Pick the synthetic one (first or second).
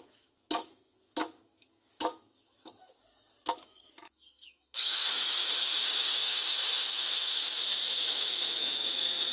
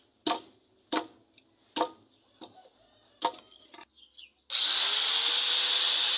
first